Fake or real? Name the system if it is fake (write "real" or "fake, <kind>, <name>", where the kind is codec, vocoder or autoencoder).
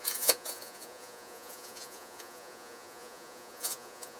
fake, vocoder, Vocos